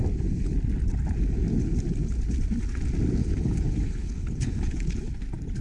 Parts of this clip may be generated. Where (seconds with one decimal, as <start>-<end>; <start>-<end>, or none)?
3.2-5.0